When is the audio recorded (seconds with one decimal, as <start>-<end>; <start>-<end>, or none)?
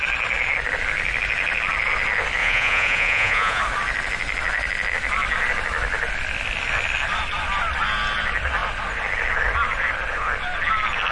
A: 0.0-2.4; 3.6-11.1